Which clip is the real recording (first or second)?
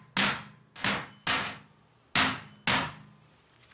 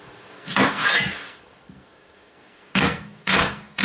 first